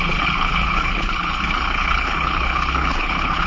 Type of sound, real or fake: fake